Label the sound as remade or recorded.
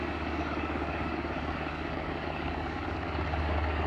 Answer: remade